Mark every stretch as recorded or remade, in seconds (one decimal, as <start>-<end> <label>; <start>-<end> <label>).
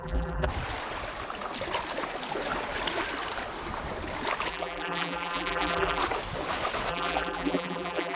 0.0-0.5 remade; 0.5-4.5 recorded; 4.5-6.0 remade; 6.0-6.9 recorded; 6.9-8.2 remade